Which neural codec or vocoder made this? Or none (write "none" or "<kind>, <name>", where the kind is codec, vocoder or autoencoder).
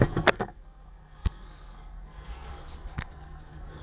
codec, SNAC